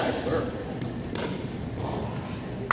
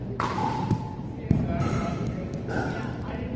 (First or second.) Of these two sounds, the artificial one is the first